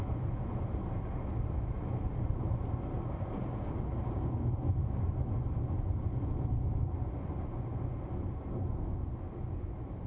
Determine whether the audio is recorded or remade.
recorded